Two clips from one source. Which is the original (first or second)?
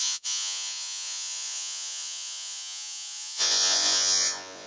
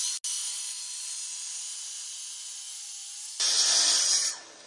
second